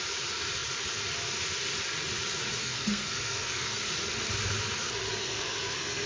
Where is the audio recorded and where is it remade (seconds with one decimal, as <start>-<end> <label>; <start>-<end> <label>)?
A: 0.0-2.6 recorded; 2.6-3.9 remade; 3.9-5.1 recorded; 5.1-6.1 remade